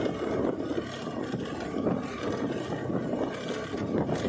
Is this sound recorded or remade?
recorded